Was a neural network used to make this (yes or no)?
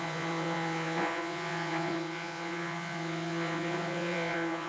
yes